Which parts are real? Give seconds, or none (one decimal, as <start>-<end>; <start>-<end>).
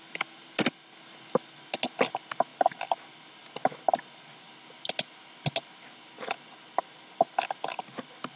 0.0-8.4